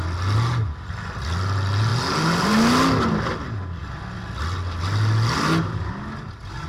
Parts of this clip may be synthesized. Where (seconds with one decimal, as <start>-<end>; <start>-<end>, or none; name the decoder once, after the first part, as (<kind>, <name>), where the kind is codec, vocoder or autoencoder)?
none